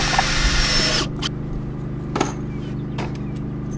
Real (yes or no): yes